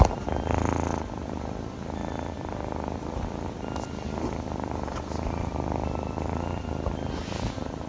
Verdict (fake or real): real